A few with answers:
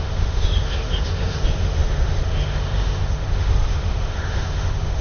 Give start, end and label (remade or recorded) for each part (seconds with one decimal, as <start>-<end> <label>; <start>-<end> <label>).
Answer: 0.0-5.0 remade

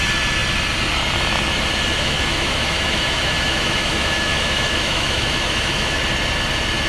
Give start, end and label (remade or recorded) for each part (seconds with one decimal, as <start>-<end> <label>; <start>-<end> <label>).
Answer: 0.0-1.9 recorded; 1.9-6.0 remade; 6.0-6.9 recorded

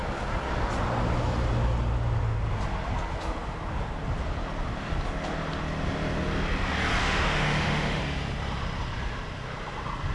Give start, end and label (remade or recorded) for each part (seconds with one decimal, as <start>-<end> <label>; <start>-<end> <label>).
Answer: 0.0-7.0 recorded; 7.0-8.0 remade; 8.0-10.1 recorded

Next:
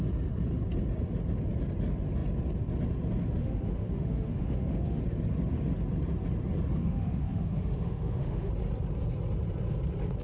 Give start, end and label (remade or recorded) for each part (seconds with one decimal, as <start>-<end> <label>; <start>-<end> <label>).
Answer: 0.0-3.4 recorded; 3.4-5.0 remade; 5.0-6.8 recorded; 6.8-8.5 remade; 8.5-10.2 recorded